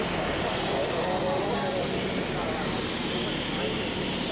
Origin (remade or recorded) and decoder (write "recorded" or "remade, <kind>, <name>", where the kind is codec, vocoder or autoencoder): recorded